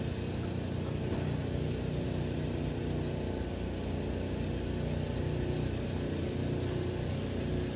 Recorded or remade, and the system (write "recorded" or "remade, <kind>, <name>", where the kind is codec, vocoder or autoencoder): recorded